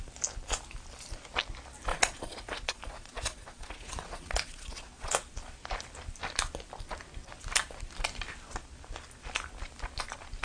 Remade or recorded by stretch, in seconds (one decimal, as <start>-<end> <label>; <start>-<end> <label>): 0.0-1.9 recorded; 1.9-5.1 remade; 5.1-10.4 recorded